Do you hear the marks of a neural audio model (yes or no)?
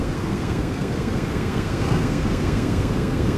yes